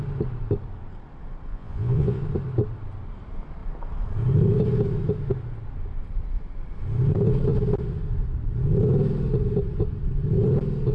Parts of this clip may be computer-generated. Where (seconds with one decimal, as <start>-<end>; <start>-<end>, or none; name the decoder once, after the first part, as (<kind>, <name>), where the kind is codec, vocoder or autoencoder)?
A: 1.5-2.2 (vocoder, Vocos)